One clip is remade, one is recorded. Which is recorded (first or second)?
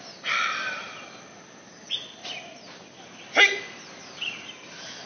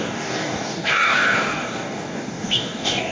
first